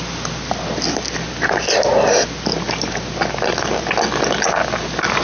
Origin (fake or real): real